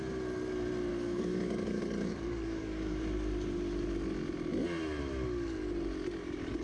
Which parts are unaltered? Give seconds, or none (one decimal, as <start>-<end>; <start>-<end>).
0.0-0.9; 3.0-6.6